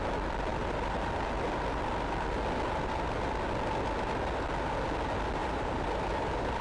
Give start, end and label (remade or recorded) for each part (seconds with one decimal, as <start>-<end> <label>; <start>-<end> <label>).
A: 0.0-0.5 recorded; 0.5-2.5 remade; 2.5-5.4 recorded; 5.4-6.6 remade